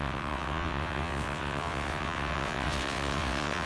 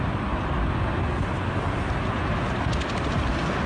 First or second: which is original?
second